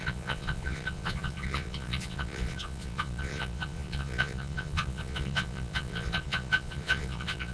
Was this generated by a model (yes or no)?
yes